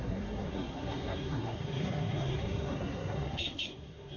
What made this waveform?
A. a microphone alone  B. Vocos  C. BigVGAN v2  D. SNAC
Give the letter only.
D